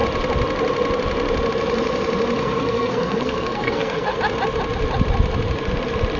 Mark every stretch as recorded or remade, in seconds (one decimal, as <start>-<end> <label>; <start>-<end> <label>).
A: 0.0-2.4 recorded; 2.4-4.2 remade; 4.2-6.2 recorded